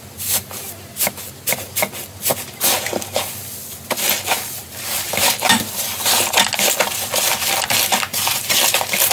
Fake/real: real